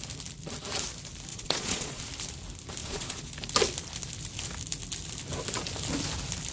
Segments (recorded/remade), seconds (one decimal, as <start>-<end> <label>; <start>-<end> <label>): 0.0-1.3 recorded; 1.3-2.0 remade; 2.0-2.8 recorded; 2.8-3.3 remade; 3.3-6.5 recorded